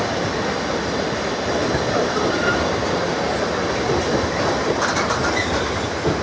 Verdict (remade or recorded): recorded